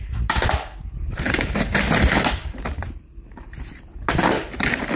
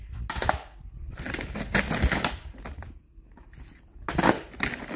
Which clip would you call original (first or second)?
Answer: second